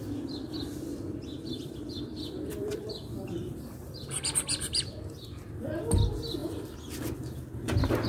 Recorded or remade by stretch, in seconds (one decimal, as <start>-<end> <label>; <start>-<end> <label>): 0.0-0.9 recorded; 0.9-5.8 remade; 5.8-6.4 recorded; 6.4-6.9 remade; 6.9-8.1 recorded